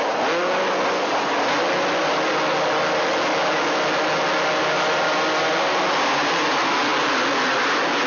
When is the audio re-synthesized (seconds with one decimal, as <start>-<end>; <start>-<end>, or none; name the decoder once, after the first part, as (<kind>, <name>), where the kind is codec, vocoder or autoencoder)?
none

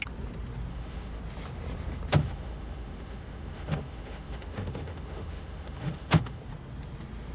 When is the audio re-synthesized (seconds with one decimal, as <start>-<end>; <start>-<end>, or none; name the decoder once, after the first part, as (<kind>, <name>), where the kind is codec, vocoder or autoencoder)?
0.7-1.2 (autoencoder, DAC-VAE); 2.2-6.4

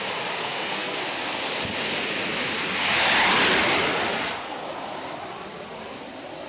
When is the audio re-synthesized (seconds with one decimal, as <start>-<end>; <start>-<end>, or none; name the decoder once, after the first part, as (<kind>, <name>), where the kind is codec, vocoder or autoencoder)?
0.4-1.1 (codec, SNAC)

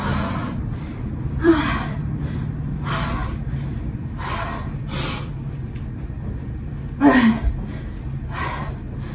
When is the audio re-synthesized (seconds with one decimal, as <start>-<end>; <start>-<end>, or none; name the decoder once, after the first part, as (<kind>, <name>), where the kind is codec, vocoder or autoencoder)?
0.4-5.3 (vocoder, BigVGAN v2)